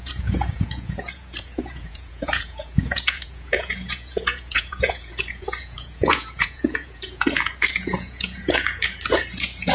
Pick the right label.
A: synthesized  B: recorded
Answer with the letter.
A